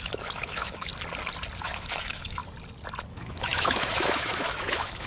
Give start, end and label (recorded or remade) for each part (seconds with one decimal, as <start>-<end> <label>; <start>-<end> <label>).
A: 0.0-0.9 remade; 0.9-1.6 recorded; 1.6-2.4 remade; 2.4-3.1 recorded; 3.1-5.1 remade